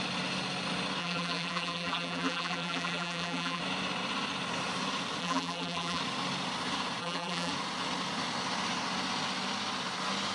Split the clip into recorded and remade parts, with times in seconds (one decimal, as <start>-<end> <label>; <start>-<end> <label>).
0.0-1.0 recorded; 1.0-3.6 remade; 3.6-5.2 recorded; 5.2-6.0 remade; 6.0-7.0 recorded; 7.0-7.5 remade; 7.5-10.3 recorded